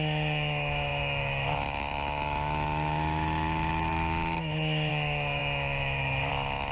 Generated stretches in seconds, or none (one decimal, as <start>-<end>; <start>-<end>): 0.0-6.7